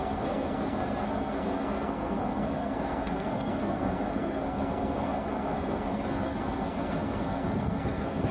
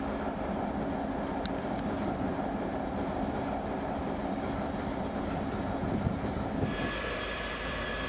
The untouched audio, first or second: second